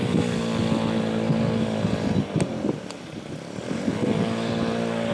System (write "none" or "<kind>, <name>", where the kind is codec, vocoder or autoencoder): none